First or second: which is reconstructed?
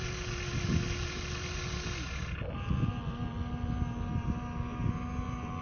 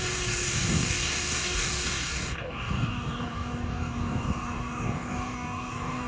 second